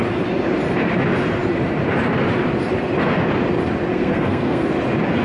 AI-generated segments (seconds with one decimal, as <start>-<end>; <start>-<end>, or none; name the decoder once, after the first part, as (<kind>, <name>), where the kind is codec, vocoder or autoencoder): 3.9-4.7 (codec, SNAC)

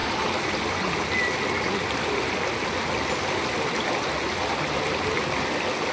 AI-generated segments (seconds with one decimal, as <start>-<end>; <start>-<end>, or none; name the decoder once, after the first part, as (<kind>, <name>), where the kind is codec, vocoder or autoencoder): none